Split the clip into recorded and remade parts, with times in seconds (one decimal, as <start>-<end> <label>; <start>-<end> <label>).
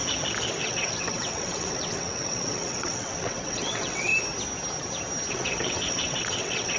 0.0-0.6 recorded; 0.6-4.1 remade; 4.1-5.3 recorded; 5.3-6.8 remade